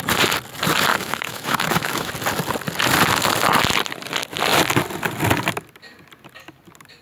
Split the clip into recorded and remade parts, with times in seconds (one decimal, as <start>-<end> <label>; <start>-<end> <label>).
0.0-0.9 recorded; 0.9-2.1 remade; 2.1-7.0 recorded